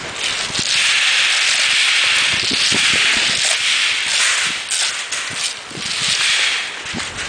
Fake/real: real